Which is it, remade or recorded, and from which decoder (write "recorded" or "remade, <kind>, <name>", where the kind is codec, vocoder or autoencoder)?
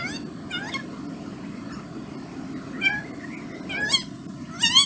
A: recorded